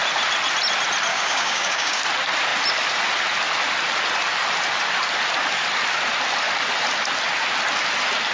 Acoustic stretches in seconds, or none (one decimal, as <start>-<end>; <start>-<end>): 0.0-1.1; 2.0-8.3